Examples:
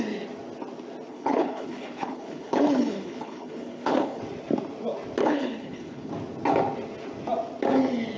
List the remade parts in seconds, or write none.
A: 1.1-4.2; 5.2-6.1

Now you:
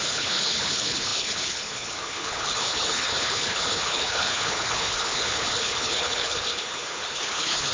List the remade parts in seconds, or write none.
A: 0.0-7.7